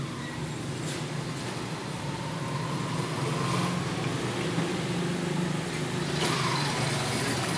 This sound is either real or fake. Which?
real